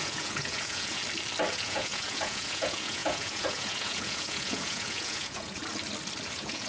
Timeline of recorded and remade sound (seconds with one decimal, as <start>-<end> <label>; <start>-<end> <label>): 0.0-1.0 remade; 1.0-1.5 recorded; 1.5-5.6 remade; 5.6-6.3 recorded; 6.3-6.7 remade